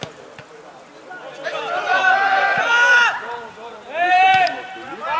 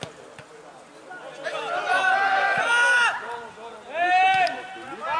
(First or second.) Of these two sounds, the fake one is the first